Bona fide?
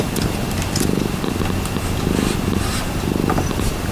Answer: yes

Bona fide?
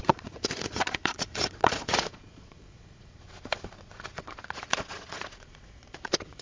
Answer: no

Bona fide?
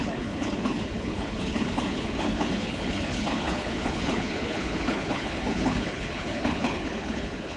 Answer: no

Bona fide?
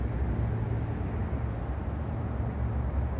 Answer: yes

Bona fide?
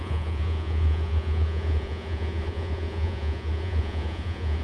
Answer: no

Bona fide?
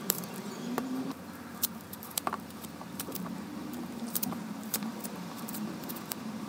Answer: no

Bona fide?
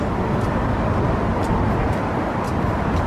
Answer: yes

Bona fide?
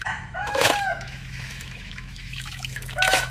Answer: no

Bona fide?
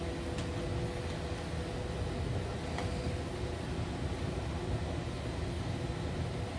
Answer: yes